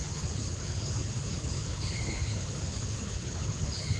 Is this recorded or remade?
remade